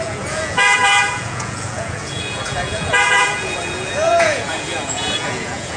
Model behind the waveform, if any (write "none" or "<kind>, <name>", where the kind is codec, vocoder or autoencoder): vocoder, Vocos